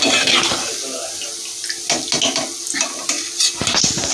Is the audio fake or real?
real